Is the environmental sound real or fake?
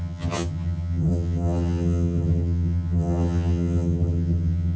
fake